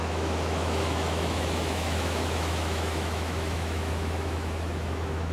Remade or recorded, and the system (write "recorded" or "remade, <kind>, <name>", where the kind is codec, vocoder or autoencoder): remade, autoencoder, DAC-VAE